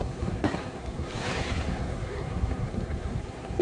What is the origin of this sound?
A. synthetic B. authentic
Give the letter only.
A